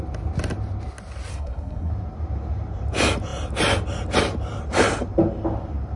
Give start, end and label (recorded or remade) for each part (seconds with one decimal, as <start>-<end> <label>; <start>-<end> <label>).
0.0-1.3 recorded; 1.3-1.9 remade; 1.9-6.0 recorded